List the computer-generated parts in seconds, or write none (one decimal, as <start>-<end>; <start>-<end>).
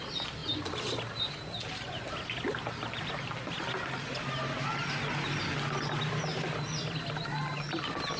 none